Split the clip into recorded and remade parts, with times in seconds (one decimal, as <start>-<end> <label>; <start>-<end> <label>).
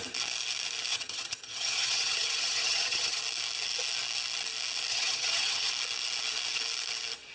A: 0.0-0.9 recorded; 0.9-3.2 remade; 3.2-4.9 recorded; 4.9-5.7 remade; 5.7-7.3 recorded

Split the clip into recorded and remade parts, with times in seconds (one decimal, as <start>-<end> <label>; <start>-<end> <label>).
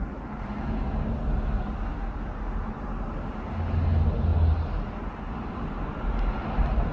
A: 0.0-6.9 recorded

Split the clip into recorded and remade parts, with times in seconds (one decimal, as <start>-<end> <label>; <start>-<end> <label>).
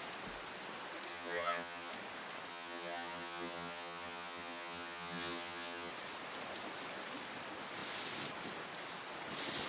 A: 0.0-1.1 recorded; 1.1-1.9 remade; 1.9-2.5 recorded; 2.5-5.9 remade; 5.9-9.7 recorded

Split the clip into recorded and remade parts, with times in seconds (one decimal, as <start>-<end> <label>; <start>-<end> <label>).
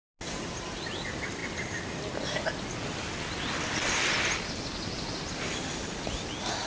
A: 0.0-6.7 recorded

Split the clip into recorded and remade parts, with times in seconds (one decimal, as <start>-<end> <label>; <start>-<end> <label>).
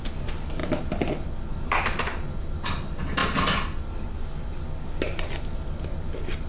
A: 0.0-6.5 recorded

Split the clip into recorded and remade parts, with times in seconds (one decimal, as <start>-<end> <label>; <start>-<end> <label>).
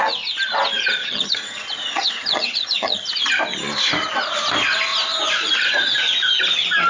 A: 0.0-1.0 recorded; 1.0-3.1 remade; 3.1-6.9 recorded